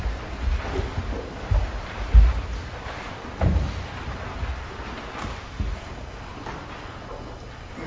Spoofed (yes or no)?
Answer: no